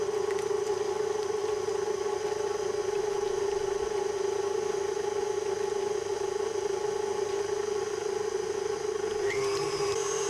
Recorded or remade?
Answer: recorded